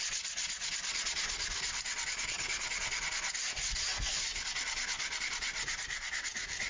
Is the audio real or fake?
real